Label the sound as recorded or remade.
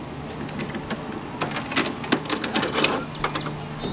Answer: recorded